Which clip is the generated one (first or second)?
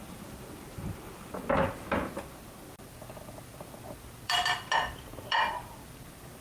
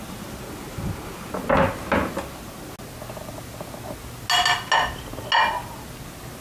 first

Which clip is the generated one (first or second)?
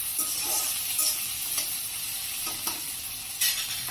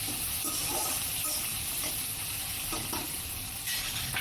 second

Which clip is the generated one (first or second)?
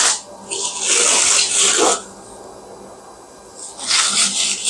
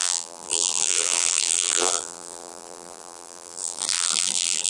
second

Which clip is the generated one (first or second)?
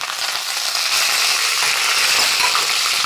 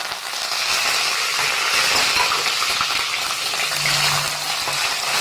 first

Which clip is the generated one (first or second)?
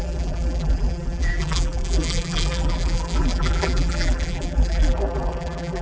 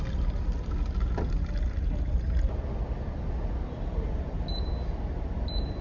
first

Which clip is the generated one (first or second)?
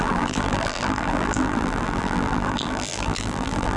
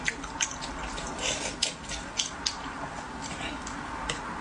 first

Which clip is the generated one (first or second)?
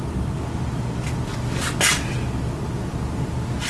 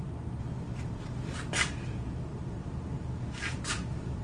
second